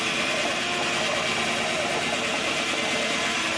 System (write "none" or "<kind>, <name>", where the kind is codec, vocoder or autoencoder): none